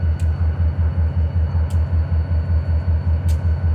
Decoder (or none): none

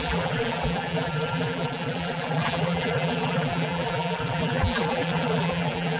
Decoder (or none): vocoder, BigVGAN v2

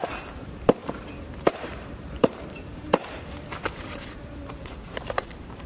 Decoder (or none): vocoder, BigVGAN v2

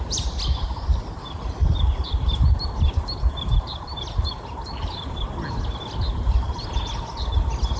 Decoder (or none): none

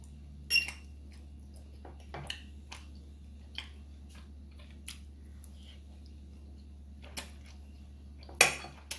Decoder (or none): none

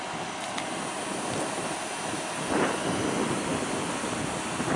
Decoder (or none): none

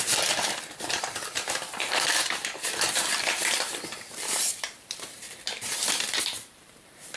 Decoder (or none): vocoder, BigVGAN v2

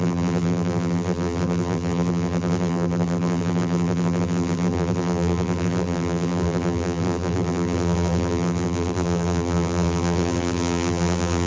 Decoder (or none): vocoder, BigVGAN v2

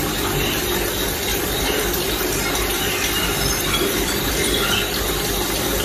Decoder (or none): vocoder, BigVGAN v2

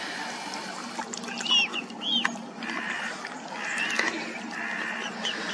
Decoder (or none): none